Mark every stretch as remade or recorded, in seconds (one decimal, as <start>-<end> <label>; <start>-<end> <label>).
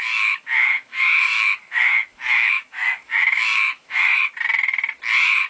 0.0-4.1 remade; 4.1-5.5 recorded